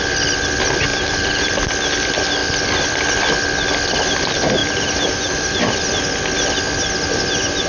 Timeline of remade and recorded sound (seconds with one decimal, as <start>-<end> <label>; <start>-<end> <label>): 0.0-0.9 recorded; 0.9-1.5 remade; 1.5-4.6 recorded; 4.6-5.6 remade; 5.6-7.7 recorded